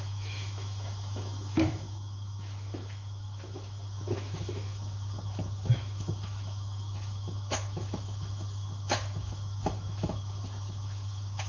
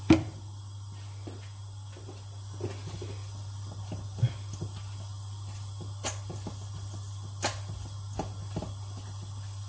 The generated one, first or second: first